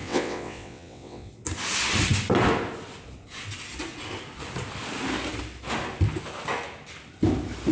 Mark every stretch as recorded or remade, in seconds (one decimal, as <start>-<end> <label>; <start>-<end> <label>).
0.0-1.3 remade; 1.3-7.7 recorded